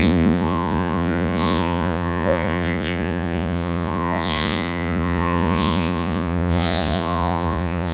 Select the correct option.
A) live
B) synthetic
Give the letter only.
B